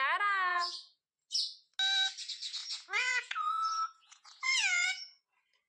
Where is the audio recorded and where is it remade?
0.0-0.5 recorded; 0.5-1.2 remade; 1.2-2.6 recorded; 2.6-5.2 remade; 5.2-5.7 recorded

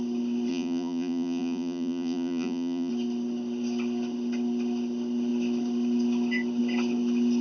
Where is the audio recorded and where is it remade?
0.0-0.5 recorded; 0.5-2.9 remade; 2.9-7.4 recorded

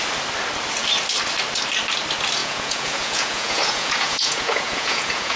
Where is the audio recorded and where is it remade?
0.0-2.4 recorded; 2.4-5.4 remade